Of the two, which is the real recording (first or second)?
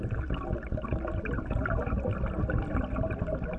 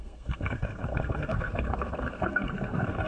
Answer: first